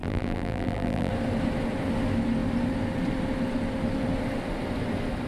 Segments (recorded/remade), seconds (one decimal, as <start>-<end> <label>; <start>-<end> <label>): 0.0-1.1 remade; 1.1-5.3 recorded